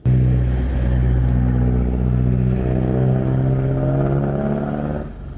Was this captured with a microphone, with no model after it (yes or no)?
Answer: yes